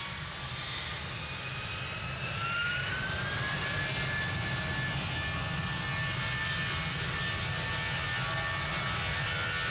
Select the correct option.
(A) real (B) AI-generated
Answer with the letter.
A